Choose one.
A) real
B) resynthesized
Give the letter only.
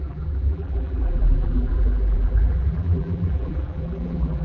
B